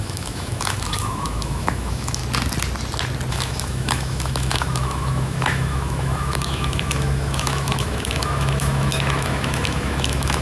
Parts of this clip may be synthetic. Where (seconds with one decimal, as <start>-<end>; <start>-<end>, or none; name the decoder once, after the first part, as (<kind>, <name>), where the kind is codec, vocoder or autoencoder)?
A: 0.0-2.2 (autoencoder, DAC-VAE); 3.3-10.4